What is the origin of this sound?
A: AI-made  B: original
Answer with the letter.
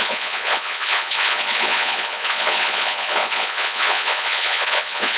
A